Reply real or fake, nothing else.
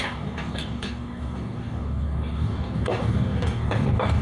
fake